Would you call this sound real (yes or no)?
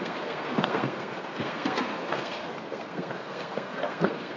no